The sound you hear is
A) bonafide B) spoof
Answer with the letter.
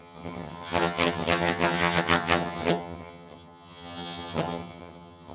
B